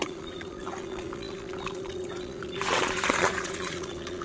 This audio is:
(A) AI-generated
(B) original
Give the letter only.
A